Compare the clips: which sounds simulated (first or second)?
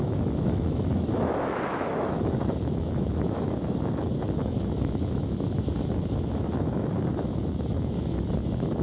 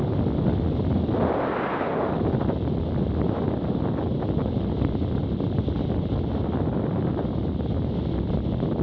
first